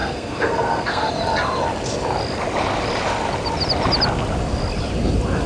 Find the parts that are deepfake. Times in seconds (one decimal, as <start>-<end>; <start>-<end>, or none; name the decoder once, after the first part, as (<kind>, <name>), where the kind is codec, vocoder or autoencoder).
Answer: 0.0-1.1 (codec, SNAC)